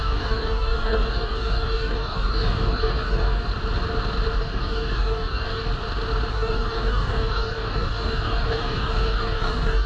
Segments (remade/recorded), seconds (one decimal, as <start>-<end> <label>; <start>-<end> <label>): 0.0-3.5 remade; 3.5-4.4 recorded; 4.4-5.7 remade; 5.7-6.3 recorded; 6.3-9.9 remade